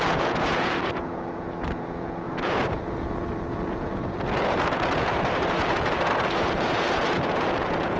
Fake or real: fake